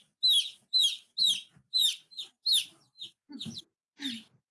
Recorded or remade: recorded